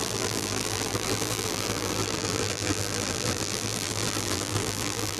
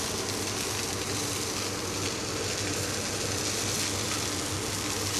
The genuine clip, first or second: second